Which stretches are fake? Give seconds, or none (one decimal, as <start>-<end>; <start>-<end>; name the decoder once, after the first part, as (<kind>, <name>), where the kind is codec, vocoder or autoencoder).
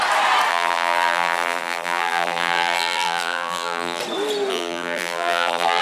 0.5-4.0 (vocoder, BigVGAN v2); 4.5-5.8